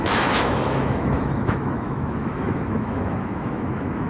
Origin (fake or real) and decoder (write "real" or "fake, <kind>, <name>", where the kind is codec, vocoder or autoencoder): fake, autoencoder, DAC-VAE